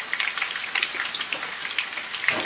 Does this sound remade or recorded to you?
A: remade